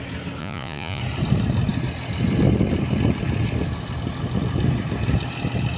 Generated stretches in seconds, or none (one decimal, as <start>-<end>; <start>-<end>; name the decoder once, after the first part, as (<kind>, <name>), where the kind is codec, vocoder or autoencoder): 0.4-1.0 (vocoder, Vocos)